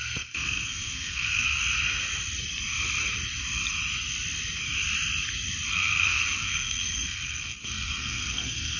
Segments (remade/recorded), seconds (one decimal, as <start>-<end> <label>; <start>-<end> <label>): 0.0-1.6 remade; 1.6-5.7 recorded; 5.7-8.8 remade